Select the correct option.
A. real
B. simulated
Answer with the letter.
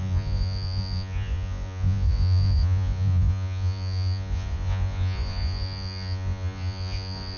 B